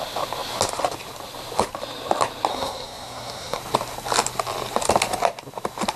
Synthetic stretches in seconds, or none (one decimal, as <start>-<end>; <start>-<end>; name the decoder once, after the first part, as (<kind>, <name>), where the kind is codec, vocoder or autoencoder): 2.5-3.6 (codec, SNAC)